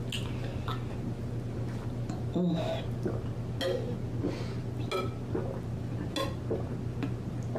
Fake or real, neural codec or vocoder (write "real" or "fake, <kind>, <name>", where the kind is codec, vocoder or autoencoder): real